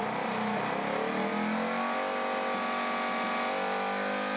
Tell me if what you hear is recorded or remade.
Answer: recorded